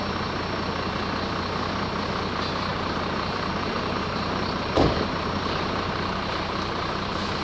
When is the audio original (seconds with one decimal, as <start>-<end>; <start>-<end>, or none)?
0.0-2.7